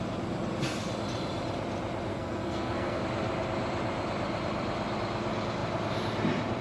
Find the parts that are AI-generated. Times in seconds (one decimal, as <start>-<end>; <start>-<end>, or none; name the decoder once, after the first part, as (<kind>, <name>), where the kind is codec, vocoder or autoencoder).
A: 2.1-3.0 (codec, SNAC)